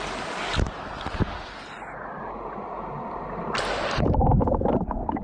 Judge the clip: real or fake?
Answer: real